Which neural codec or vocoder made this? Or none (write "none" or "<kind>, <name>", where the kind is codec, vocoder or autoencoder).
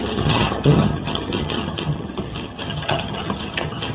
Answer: vocoder, HiFi-GAN